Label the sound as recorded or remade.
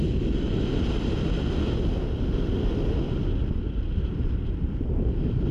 recorded